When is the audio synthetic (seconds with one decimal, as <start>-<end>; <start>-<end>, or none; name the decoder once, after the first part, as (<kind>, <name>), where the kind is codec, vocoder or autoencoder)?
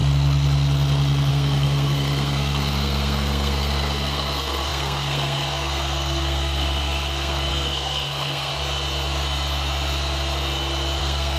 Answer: 1.3-8.5 (codec, SNAC); 11.0-11.4